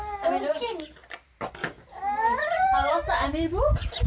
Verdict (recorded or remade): recorded